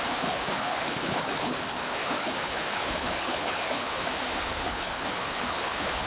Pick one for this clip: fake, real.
fake